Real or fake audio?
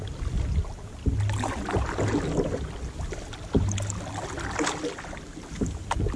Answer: real